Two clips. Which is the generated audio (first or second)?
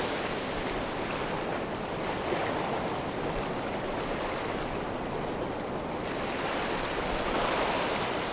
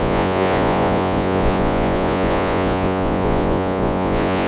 second